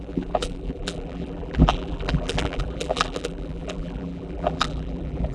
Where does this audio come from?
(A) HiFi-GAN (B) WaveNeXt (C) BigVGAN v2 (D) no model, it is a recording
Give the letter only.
C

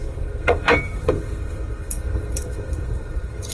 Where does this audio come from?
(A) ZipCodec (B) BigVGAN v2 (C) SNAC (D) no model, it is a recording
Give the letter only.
C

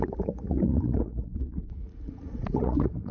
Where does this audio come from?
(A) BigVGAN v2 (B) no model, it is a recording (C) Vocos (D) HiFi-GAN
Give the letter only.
C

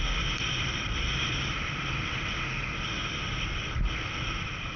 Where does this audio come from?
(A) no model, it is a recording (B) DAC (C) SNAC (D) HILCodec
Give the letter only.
A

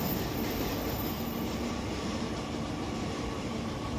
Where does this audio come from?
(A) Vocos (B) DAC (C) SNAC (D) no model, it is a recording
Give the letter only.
D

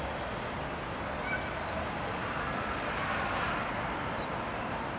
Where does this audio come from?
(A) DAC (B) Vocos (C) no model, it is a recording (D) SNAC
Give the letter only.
C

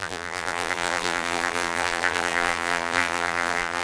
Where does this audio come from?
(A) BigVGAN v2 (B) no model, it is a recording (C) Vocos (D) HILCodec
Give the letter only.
A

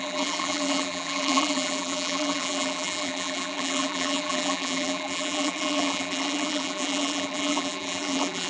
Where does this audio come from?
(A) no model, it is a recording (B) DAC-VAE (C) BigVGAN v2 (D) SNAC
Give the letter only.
C